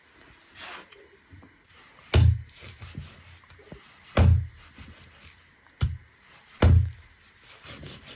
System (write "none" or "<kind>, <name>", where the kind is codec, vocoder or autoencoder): none